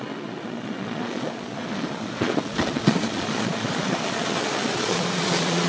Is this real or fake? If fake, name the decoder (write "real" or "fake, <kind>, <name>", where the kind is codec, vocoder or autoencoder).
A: fake, vocoder, Vocos